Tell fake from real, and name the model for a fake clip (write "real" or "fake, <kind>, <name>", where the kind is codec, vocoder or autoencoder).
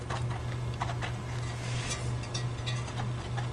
real